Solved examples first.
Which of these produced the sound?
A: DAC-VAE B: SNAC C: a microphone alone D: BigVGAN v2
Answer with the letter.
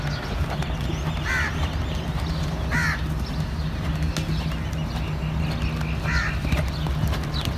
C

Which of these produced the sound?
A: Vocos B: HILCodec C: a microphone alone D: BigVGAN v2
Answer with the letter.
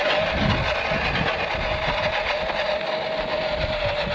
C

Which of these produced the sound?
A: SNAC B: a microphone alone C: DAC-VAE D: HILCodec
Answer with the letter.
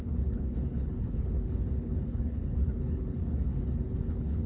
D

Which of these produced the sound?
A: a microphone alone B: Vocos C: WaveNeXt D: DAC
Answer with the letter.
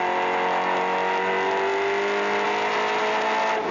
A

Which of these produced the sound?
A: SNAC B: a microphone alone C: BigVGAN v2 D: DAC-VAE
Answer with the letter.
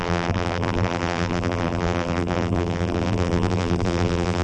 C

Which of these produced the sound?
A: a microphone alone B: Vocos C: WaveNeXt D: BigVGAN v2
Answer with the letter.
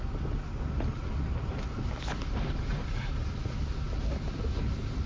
A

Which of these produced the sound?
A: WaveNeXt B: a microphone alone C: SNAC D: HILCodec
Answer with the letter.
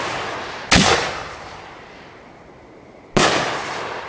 B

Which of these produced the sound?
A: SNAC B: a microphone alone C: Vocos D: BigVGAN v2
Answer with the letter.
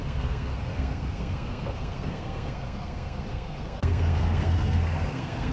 A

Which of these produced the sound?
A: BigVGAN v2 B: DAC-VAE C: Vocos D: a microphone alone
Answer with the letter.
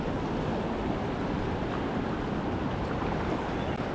D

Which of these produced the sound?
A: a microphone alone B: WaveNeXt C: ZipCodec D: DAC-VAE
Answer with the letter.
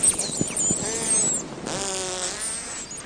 A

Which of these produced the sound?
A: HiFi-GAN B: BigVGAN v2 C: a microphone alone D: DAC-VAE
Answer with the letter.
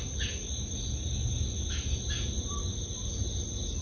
C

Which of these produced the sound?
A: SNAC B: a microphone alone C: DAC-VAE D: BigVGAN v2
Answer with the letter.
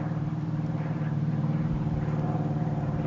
D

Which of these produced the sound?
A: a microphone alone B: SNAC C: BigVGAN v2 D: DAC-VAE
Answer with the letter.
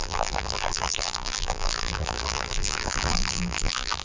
C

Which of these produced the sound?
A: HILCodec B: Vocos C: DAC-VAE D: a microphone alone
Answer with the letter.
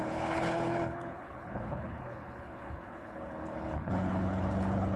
A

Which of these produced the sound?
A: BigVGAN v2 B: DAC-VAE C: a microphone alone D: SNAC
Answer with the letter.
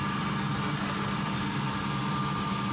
C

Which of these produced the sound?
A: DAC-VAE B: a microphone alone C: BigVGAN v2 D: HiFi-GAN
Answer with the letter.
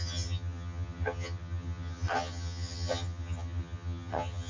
D